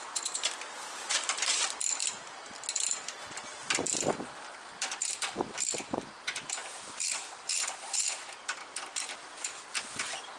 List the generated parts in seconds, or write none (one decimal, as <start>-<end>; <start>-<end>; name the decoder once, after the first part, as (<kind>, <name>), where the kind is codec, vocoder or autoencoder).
0.0-2.0 (vocoder, BigVGAN v2); 5.1-8.6; 9.6-10.4